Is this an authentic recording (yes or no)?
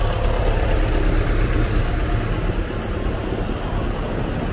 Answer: yes